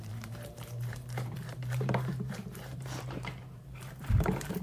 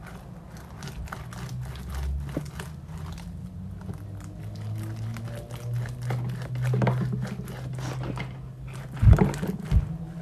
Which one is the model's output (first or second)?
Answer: first